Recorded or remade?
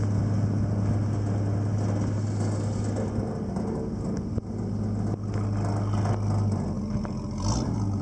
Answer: recorded